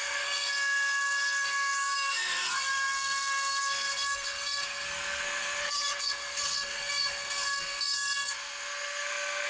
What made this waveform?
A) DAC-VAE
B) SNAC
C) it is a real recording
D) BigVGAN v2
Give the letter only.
B